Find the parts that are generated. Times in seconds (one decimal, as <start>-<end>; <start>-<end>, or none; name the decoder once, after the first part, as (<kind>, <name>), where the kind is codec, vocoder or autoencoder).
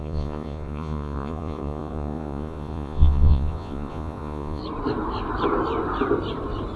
0.0-4.6 (vocoder, Vocos)